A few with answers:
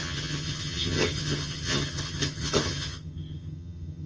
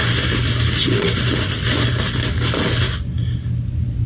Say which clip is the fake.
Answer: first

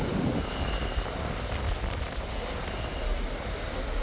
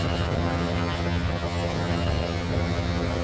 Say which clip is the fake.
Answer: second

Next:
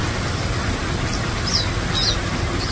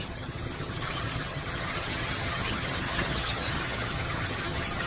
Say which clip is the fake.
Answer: second